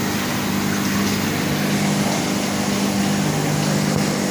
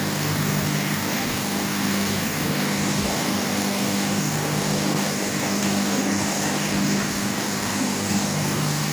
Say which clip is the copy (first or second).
second